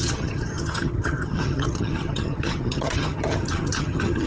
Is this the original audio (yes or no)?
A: no